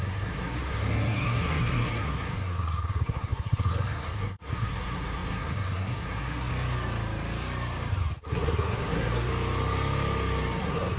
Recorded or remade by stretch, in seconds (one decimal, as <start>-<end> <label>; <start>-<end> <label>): 0.0-6.5 remade; 6.5-8.2 recorded; 8.2-9.3 remade; 9.3-10.6 recorded; 10.6-11.0 remade